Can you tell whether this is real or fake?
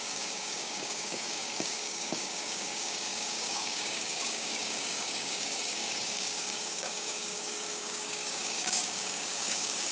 fake